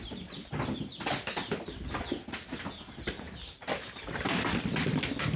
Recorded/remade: recorded